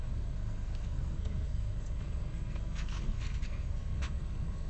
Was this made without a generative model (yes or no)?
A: no